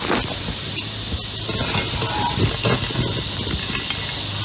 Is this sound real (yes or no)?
yes